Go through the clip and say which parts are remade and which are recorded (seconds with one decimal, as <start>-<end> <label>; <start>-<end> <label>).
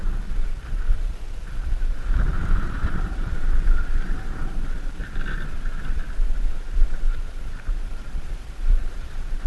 0.0-0.9 recorded; 0.9-5.0 remade; 5.0-7.9 recorded; 7.9-9.5 remade